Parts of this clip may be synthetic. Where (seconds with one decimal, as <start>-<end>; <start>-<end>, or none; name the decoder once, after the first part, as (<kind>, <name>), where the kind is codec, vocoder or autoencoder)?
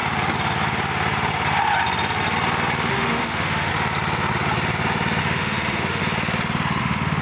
2.9-3.7 (autoencoder, DAC-VAE); 5.2-6.0; 6.8-7.2